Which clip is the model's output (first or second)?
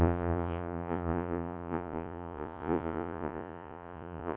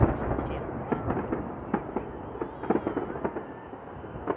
first